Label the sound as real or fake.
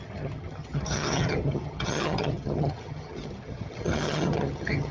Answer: fake